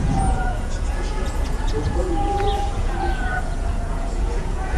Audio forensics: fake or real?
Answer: fake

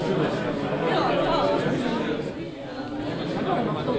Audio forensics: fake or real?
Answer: real